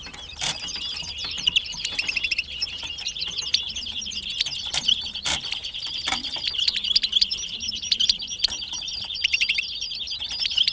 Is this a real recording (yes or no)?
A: no